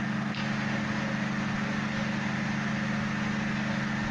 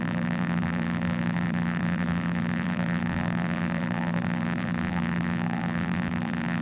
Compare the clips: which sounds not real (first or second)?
second